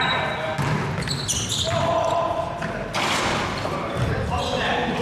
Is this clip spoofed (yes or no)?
no